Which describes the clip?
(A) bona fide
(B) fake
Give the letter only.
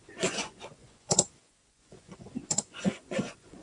B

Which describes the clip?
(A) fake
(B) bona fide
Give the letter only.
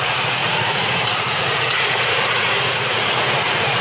A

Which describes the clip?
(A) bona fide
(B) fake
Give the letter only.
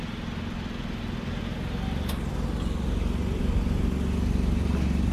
A